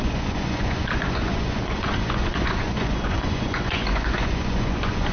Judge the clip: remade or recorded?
remade